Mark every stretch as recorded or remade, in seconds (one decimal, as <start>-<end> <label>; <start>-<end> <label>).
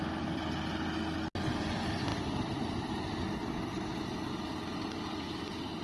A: 0.0-5.8 recorded